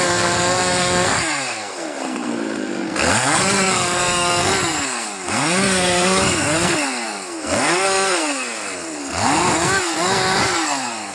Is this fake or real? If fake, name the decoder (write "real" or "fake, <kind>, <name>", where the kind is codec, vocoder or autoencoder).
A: fake, codec, SNAC